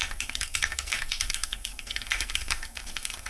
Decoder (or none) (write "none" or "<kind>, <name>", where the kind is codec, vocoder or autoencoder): codec, SNAC